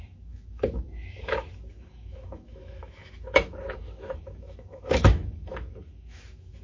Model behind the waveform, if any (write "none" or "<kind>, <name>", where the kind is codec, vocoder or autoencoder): autoencoder, DAC-VAE